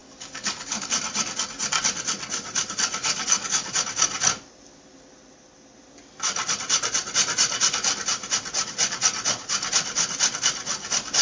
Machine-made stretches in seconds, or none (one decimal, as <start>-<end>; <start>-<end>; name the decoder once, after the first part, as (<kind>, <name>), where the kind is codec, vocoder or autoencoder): 0.0-1.0 (codec, DAC); 3.0-3.7